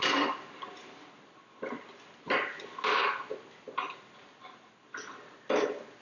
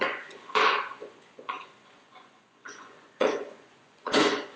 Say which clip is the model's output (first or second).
second